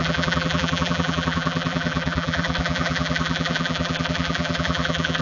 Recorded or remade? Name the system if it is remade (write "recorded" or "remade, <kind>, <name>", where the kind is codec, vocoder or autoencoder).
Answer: remade, vocoder, BigVGAN v2